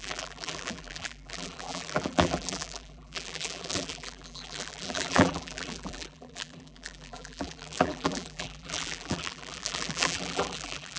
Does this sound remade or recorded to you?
remade